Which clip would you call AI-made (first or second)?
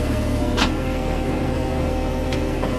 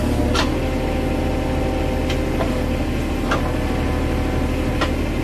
first